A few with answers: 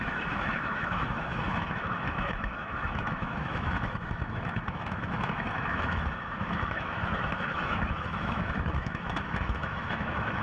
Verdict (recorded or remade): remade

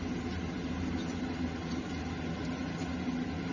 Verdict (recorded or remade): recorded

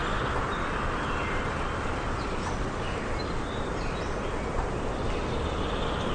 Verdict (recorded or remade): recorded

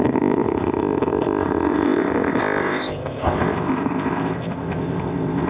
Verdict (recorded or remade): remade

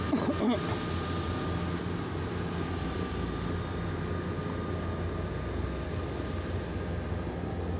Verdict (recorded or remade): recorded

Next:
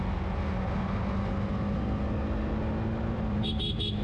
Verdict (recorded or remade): recorded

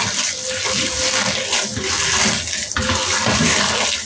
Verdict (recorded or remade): recorded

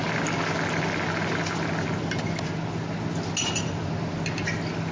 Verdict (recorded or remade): recorded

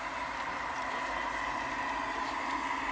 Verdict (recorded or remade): recorded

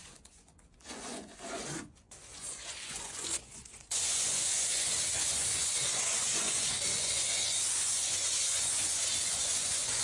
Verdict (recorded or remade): remade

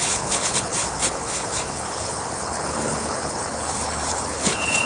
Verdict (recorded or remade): remade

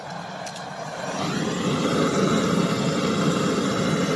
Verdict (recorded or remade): recorded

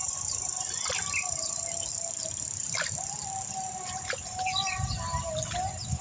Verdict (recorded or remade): recorded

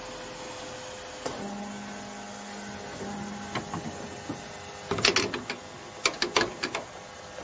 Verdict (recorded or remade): recorded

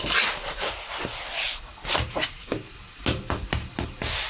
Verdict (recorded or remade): recorded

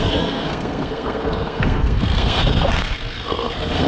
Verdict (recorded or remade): remade